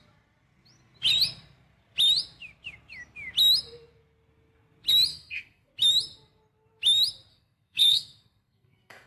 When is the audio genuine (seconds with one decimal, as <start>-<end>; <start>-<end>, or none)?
0.0-5.1; 5.7-7.3

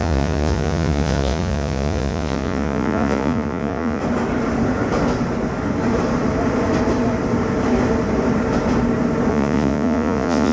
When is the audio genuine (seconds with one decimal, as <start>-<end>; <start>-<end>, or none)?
4.0-9.3